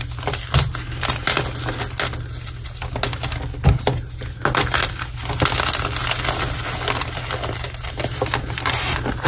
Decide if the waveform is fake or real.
real